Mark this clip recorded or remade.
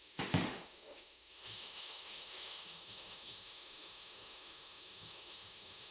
remade